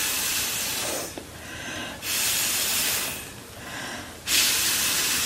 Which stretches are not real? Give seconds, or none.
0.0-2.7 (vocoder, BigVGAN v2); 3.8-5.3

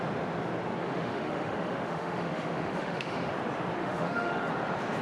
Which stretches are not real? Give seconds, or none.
0.8-3.3 (autoencoder, DAC-VAE); 3.8-4.5

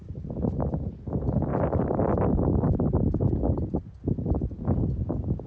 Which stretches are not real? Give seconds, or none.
none

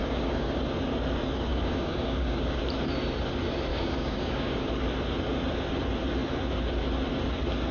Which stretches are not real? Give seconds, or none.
0.0-0.6 (codec, DAC); 1.5-2.6; 3.7-4.7

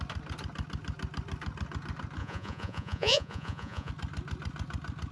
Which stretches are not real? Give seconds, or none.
2.2-3.9 (vocoder, Vocos)

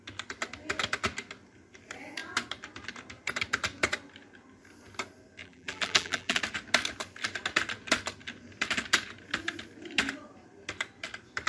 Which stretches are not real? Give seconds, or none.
5.4-6.4 (vocoder, BigVGAN v2)

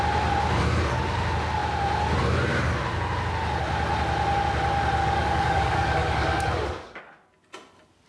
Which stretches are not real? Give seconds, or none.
5.0-7.0 (codec, DAC)

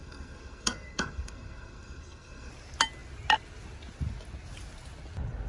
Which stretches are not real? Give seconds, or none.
0.0-2.5 (codec, SNAC)